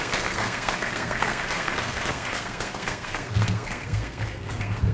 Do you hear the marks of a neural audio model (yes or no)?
yes